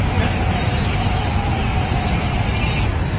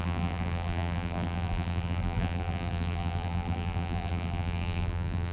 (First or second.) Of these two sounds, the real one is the first